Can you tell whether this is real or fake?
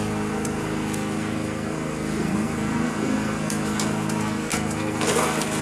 fake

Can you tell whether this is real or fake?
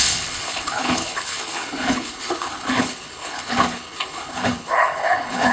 fake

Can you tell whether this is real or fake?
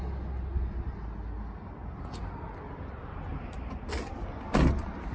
real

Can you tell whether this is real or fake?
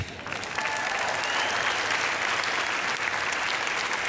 real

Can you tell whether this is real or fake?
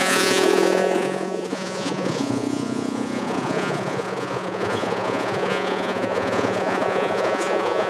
fake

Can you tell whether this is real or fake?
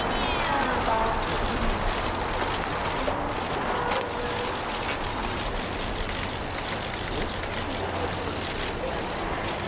real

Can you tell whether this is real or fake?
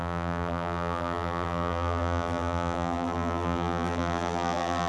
fake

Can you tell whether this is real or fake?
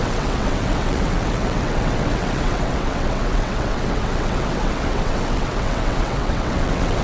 fake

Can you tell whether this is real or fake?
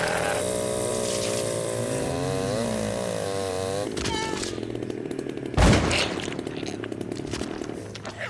real